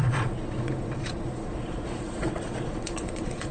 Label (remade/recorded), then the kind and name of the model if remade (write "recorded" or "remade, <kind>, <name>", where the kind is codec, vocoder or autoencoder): remade, vocoder, Vocos